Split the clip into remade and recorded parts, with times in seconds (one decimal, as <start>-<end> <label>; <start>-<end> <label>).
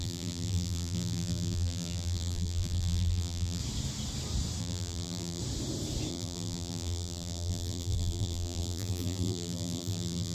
0.0-3.6 remade; 3.6-4.6 recorded; 4.6-5.4 remade; 5.4-6.1 recorded; 6.1-10.3 remade